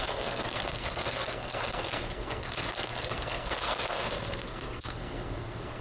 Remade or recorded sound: remade